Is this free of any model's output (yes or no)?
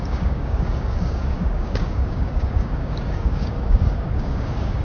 no